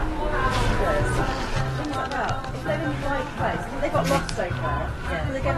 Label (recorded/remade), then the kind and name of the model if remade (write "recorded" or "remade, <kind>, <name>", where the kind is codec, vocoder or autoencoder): recorded